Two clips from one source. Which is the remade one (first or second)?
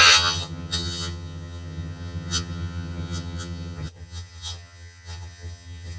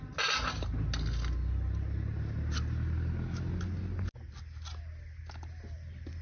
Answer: first